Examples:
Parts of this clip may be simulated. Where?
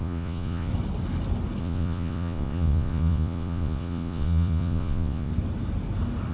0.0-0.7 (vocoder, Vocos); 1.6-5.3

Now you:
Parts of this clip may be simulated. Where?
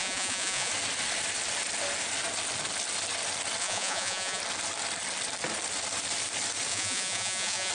0.0-0.7 (vocoder, Vocos); 3.6-4.4; 6.7-7.7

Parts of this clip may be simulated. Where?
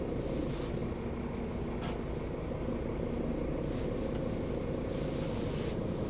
none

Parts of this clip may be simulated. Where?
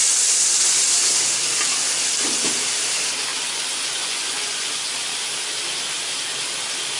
3.3-4.9 (vocoder, Vocos)